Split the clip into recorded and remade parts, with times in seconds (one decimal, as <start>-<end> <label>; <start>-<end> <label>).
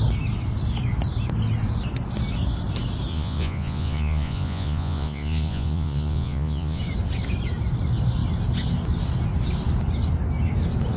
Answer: 0.0-3.1 recorded; 3.1-6.8 remade; 6.8-11.0 recorded